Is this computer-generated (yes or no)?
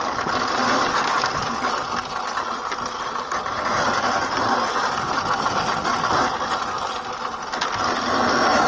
no